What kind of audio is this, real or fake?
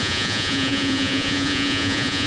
fake